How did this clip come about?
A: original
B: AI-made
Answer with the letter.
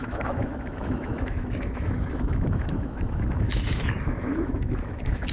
B